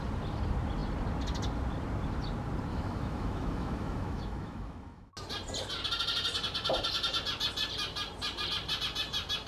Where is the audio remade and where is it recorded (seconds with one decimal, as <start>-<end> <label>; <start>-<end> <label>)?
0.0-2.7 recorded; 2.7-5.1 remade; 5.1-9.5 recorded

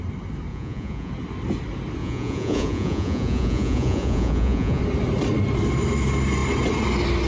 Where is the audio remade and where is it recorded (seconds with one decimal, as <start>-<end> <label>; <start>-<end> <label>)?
0.0-0.5 recorded; 0.5-1.1 remade; 1.1-2.0 recorded; 2.0-4.8 remade; 4.8-7.3 recorded

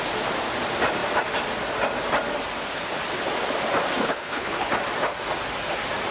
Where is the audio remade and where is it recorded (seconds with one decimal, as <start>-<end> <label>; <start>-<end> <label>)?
0.0-4.0 recorded; 4.0-4.7 remade; 4.7-6.1 recorded